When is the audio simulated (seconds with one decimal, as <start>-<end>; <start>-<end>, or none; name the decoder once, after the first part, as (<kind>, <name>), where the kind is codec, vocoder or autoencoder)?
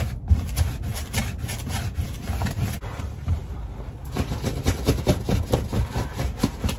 none